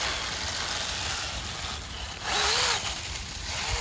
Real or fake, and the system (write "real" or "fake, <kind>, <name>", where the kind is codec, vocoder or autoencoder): fake, vocoder, BigVGAN v2